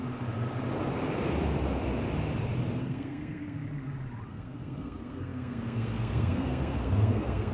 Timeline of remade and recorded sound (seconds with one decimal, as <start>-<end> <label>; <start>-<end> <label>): 0.0-2.8 recorded; 2.8-3.6 remade; 3.6-4.3 recorded; 4.3-7.5 remade